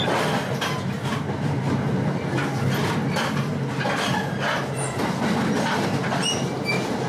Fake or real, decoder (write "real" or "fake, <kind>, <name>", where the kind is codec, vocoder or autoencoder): real